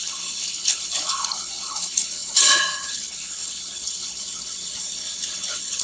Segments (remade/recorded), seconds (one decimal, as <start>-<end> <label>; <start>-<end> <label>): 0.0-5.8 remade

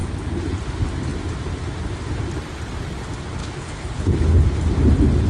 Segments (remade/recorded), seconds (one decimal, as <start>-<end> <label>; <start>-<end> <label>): 0.0-3.4 recorded; 3.4-4.3 remade; 4.3-5.3 recorded

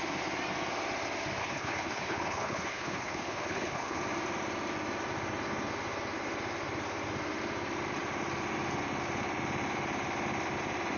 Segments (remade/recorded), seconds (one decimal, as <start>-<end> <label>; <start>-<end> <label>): 0.0-1.4 recorded; 1.4-4.0 remade; 4.0-11.0 recorded

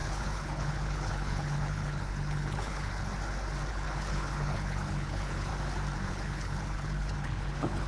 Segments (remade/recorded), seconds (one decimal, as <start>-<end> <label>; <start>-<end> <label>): 0.0-3.1 remade; 3.1-3.7 recorded; 3.7-5.5 remade; 5.5-6.1 recorded; 6.1-7.9 remade